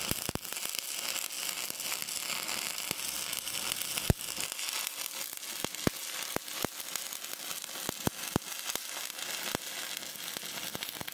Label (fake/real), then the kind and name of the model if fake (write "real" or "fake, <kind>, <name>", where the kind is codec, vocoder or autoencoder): real